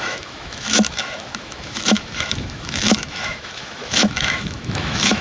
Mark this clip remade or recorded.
remade